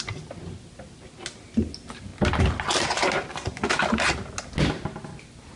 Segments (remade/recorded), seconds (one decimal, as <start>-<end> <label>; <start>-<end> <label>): 0.0-5.6 recorded